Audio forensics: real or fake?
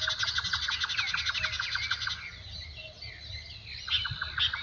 real